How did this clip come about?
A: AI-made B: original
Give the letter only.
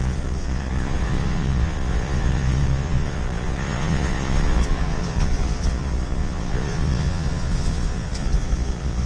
A